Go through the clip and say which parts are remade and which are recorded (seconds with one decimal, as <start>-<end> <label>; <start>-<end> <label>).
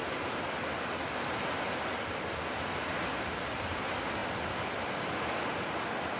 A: 0.0-6.2 recorded